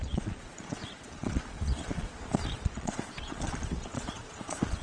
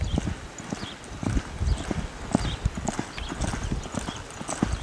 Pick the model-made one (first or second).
first